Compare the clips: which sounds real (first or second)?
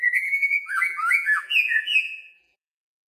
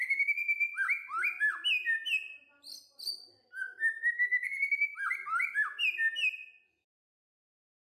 second